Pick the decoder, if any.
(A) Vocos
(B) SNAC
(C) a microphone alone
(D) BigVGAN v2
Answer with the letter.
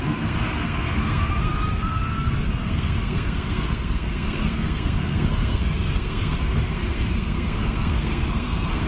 B